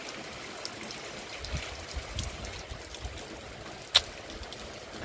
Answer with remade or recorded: recorded